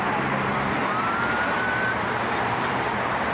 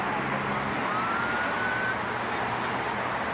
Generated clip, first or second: first